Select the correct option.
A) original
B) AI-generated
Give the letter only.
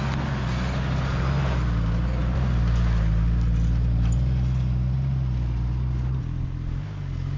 A